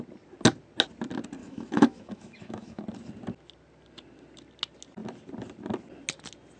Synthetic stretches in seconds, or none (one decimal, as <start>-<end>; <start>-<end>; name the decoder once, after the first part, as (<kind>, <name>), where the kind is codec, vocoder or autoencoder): 1.4-2.8 (autoencoder, DAC-VAE)